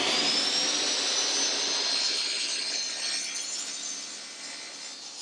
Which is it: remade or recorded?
recorded